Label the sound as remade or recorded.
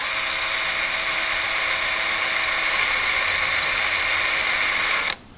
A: recorded